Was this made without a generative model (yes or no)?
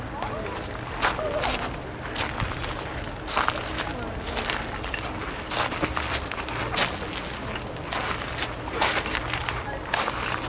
yes